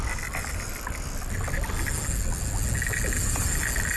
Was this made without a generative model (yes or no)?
yes